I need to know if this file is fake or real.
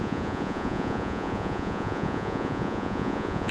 fake